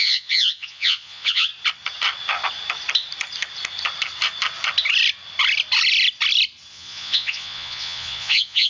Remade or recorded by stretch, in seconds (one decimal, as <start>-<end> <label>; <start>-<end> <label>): 0.0-1.5 remade; 1.5-6.7 recorded; 6.7-8.7 remade